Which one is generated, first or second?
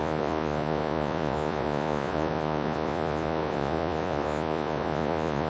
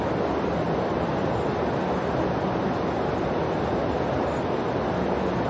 first